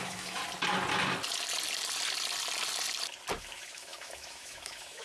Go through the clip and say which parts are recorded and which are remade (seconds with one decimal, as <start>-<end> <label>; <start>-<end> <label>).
0.0-0.4 remade; 0.4-3.4 recorded; 3.4-5.0 remade